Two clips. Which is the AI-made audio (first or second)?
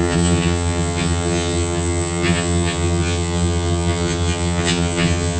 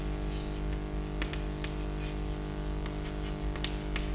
first